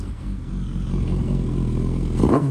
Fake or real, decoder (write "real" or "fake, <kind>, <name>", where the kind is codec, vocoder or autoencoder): fake, codec, SNAC